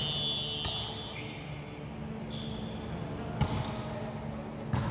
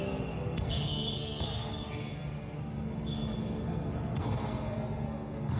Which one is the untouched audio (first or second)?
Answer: first